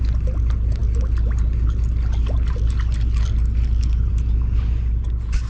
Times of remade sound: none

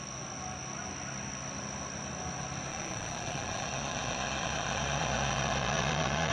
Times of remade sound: 2.7-6.3 (vocoder, Vocos)

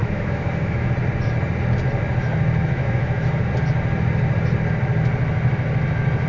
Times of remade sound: 0.0-0.9 (autoencoder, DAC-VAE); 2.6-3.5